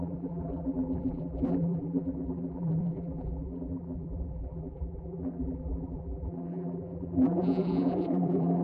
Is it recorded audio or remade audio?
remade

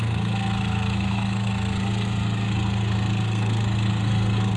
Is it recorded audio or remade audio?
remade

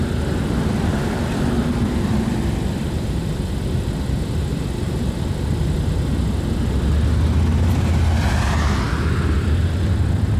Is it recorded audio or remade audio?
recorded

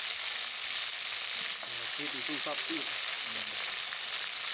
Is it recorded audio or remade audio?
recorded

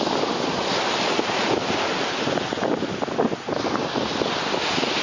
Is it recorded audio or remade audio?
recorded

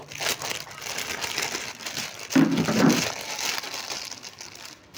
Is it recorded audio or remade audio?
recorded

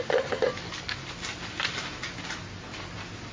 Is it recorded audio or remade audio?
recorded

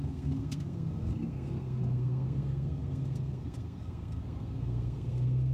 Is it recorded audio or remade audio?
remade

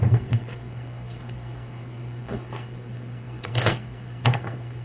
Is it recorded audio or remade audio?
remade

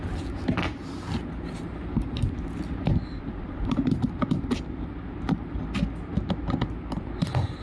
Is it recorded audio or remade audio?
recorded